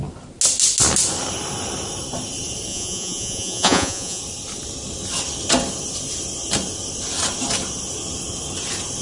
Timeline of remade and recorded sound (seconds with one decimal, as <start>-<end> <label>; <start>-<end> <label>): 0.0-2.7 recorded; 2.7-4.2 remade; 4.2-9.0 recorded